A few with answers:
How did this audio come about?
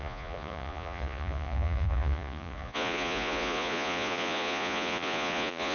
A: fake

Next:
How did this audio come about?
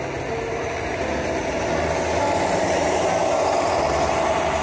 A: real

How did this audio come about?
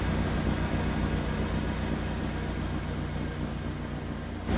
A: real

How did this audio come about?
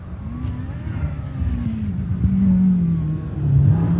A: real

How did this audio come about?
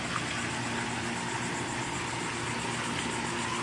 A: real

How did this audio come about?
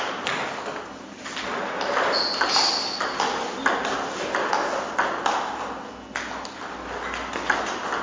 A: real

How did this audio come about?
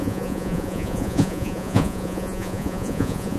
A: fake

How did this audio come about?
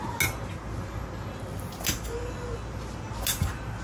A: real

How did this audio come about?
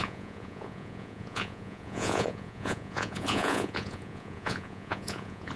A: fake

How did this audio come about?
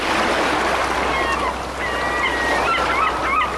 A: real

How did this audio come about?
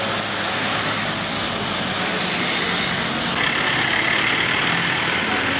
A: real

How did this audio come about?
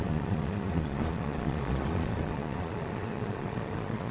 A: fake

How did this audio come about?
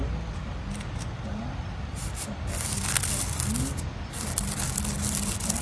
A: real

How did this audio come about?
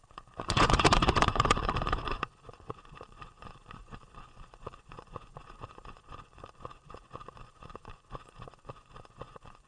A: fake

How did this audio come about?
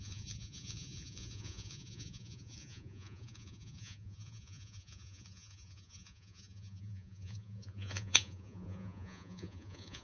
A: fake